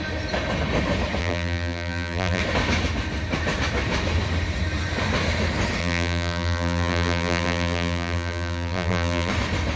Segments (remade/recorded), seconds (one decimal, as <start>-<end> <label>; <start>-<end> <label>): 0.0-1.2 recorded; 1.2-2.4 remade; 2.4-5.8 recorded; 5.8-9.3 remade; 9.3-9.8 recorded